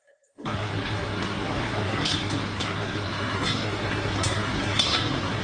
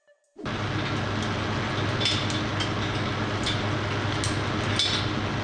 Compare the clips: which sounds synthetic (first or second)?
first